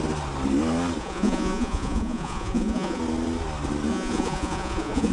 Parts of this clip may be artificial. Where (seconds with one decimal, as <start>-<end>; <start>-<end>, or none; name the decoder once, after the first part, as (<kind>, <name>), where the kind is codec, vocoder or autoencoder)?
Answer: 1.0-3.0 (vocoder, Vocos); 3.9-5.1